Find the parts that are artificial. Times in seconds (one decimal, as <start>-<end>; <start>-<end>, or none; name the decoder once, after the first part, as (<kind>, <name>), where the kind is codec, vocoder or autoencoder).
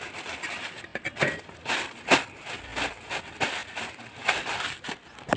0.0-0.9 (vocoder, BigVGAN v2); 1.6-2.7; 3.2-3.6; 4.1-5.4